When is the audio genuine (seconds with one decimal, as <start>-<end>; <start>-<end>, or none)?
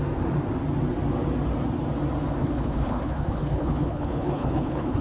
0.0-2.4